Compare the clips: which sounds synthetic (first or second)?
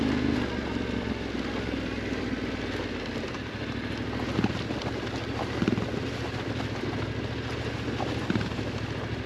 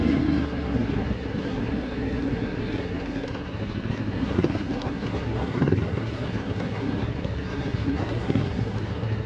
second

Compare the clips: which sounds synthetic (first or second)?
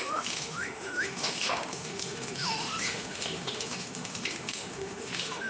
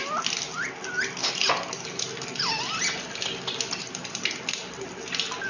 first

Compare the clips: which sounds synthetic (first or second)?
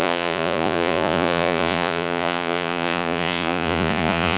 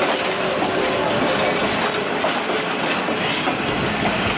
first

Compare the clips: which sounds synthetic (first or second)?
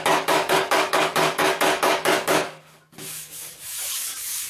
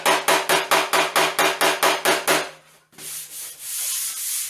first